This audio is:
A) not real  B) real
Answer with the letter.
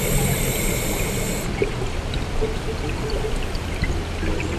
B